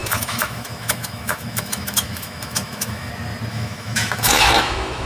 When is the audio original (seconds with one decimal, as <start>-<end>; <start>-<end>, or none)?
3.1-3.5